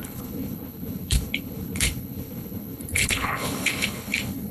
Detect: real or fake fake